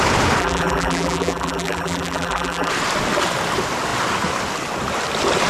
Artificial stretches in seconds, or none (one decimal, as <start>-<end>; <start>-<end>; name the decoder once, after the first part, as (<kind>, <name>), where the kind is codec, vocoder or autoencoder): 0.4-2.7 (vocoder, BigVGAN v2)